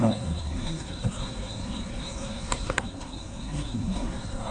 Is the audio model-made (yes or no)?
yes